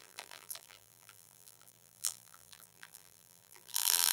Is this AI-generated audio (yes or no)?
yes